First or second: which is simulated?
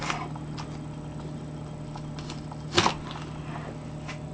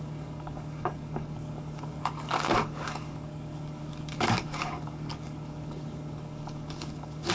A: second